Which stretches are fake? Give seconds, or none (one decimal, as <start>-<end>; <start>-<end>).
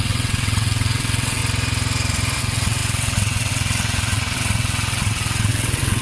0.0-1.4; 2.4-6.0